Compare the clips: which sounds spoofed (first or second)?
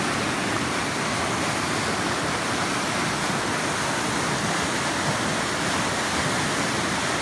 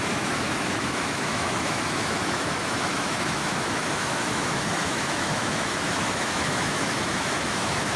second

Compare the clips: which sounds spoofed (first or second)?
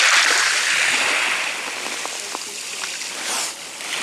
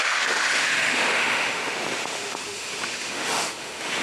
second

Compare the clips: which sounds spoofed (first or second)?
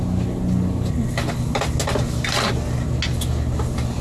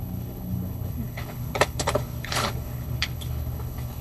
second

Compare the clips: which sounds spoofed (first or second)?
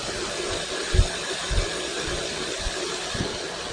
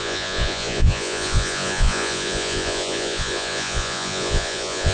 second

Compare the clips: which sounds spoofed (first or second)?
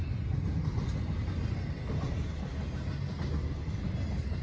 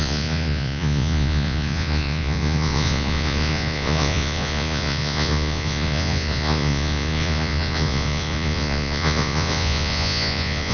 second